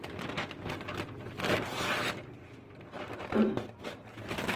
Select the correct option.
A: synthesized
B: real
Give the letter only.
B